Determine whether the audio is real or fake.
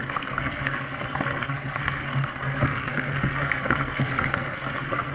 fake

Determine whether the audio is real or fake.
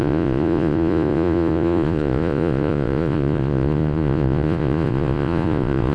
fake